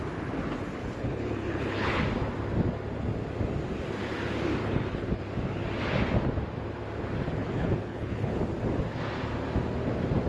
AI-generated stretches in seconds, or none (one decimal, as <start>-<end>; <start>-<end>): 0.8-2.0; 4.6-5.2; 7.4-8.4